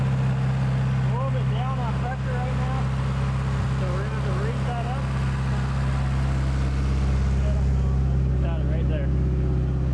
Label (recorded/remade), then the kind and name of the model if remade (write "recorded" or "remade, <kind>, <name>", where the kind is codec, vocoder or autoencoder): recorded